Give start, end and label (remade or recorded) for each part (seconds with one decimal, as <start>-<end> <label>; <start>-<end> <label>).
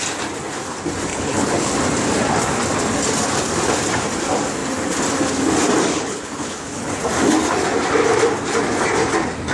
0.0-1.1 recorded; 1.1-1.7 remade; 1.7-5.9 recorded; 5.9-6.9 remade; 6.9-9.5 recorded